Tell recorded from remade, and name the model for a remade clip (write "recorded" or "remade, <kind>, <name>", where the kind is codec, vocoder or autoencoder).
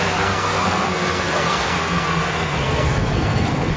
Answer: remade, codec, SNAC